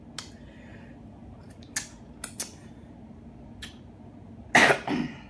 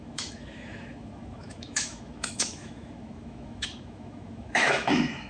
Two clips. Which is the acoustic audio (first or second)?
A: first